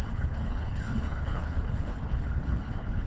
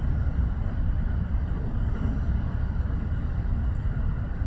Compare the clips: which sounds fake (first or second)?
first